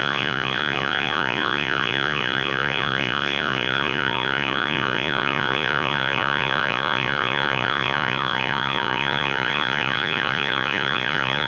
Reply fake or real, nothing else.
fake